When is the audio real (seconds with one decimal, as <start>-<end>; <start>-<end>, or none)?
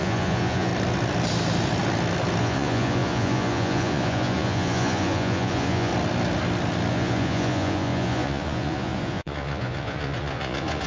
0.7-2.4; 5.9-6.9